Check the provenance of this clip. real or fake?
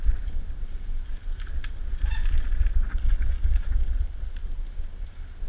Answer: real